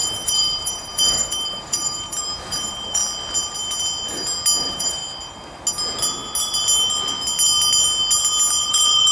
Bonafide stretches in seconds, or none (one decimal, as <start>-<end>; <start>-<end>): 3.0-4.6; 5.0-8.7